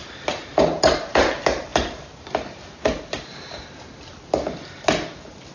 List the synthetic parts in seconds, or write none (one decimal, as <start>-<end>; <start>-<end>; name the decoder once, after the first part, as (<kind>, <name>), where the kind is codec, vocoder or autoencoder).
none